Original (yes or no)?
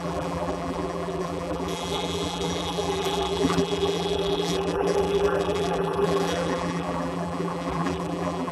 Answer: no